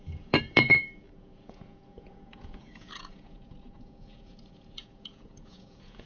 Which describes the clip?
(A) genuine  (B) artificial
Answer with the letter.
B